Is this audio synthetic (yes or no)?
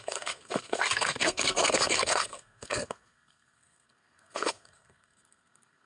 yes